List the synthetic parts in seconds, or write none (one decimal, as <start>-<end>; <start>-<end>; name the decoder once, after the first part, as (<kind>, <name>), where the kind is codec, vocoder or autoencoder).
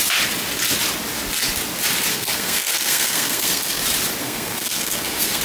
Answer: 2.1-3.8 (codec, SNAC); 4.2-5.4